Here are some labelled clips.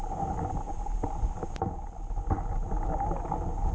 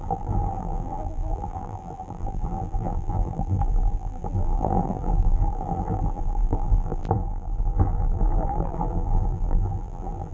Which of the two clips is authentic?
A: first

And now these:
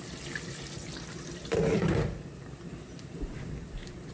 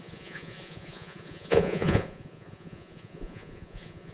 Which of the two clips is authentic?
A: first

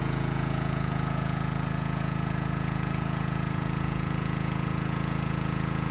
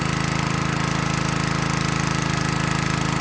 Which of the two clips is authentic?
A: second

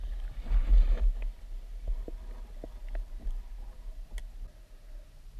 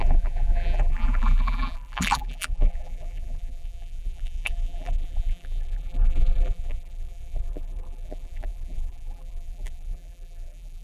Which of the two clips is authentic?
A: first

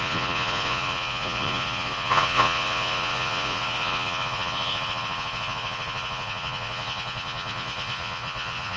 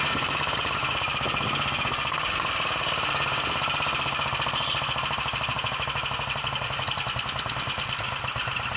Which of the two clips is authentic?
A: second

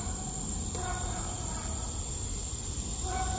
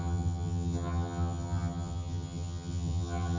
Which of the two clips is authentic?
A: first